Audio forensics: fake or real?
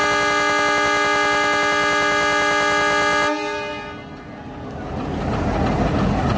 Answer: real